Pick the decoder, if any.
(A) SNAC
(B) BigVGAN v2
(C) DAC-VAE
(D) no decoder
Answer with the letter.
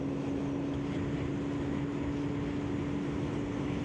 D